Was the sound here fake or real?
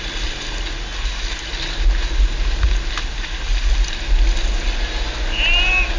real